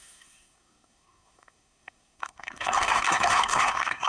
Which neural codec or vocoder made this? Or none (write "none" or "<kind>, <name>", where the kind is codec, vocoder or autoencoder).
codec, SNAC